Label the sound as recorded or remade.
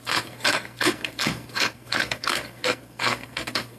remade